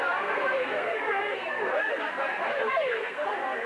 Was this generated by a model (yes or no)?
yes